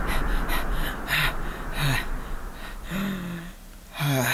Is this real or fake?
real